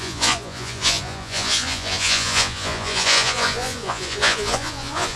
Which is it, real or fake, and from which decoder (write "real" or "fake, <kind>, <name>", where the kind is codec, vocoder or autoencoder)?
fake, vocoder, Vocos